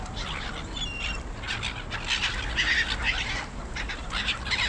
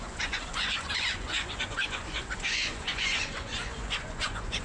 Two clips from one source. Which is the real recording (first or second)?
first